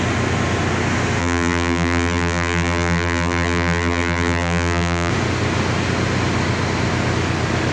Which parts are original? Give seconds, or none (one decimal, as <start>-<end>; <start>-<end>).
0.0-1.2; 5.1-7.7